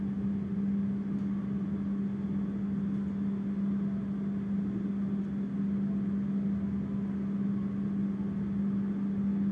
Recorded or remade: recorded